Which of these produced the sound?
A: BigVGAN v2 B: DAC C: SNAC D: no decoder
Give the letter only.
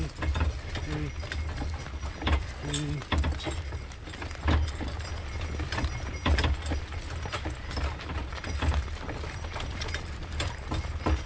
D